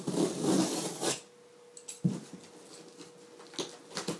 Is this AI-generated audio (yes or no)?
no